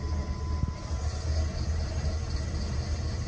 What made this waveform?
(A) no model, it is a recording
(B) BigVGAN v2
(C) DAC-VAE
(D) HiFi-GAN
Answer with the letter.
A